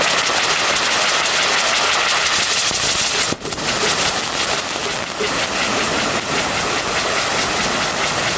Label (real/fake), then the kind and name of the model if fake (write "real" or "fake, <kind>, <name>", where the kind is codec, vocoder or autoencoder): real